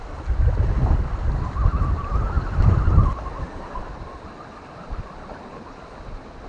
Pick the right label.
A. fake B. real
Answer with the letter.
B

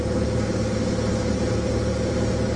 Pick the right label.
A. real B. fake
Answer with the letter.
A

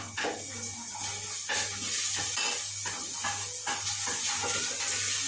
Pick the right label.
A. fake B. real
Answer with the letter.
B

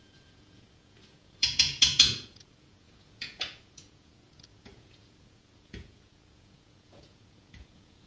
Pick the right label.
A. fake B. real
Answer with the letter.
A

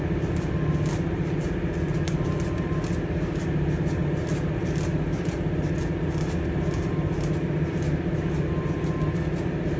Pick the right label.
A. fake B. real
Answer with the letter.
B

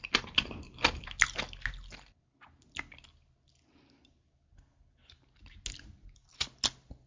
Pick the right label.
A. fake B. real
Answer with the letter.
B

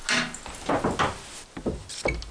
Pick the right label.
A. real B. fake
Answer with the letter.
A